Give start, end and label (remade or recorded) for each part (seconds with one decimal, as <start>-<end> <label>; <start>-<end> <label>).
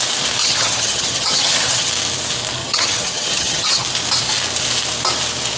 0.0-0.4 recorded; 0.4-1.9 remade; 1.9-2.6 recorded; 2.6-3.8 remade; 3.8-5.6 recorded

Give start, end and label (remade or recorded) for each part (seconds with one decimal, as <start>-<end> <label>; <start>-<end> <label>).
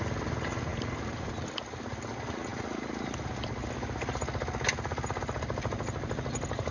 0.0-6.7 recorded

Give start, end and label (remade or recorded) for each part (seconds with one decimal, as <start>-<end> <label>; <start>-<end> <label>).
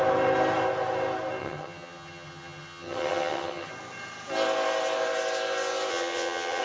0.0-1.4 recorded; 1.4-3.7 remade; 3.7-5.9 recorded; 5.9-6.6 remade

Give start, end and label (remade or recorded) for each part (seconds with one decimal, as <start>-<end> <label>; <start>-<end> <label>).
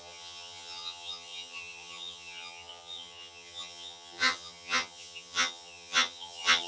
0.0-6.7 remade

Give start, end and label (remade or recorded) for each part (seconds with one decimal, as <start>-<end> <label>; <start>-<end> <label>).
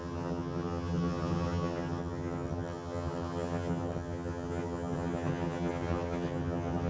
0.0-6.9 remade